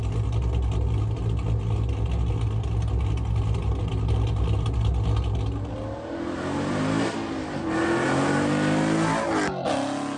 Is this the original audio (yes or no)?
yes